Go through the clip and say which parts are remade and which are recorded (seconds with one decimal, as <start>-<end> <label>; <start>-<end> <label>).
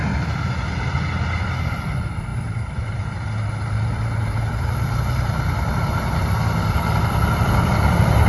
0.0-1.6 recorded; 1.6-8.3 remade